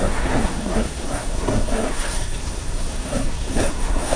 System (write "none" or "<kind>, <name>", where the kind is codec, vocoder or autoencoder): codec, SNAC